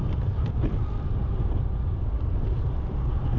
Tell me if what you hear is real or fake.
real